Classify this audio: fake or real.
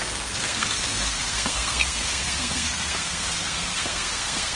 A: fake